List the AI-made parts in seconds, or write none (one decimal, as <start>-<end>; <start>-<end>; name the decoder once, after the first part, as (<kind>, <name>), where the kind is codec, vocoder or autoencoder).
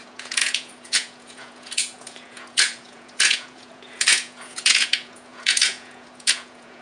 0.0-6.8 (vocoder, Vocos)